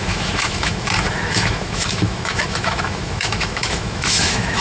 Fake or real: fake